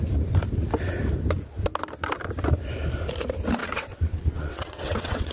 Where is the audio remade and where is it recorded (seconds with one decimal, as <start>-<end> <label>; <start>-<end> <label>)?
0.0-3.6 recorded; 3.6-5.3 remade

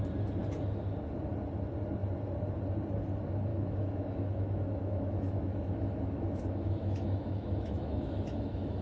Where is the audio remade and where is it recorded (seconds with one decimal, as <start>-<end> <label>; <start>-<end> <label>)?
0.0-3.5 recorded; 3.5-8.8 remade